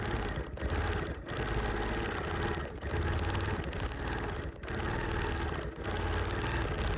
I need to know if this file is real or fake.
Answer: real